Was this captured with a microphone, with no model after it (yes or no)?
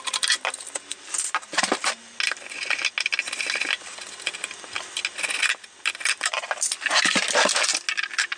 yes